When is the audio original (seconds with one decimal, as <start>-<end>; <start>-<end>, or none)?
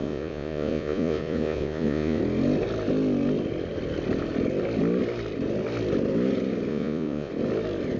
2.2-6.7; 7.3-8.0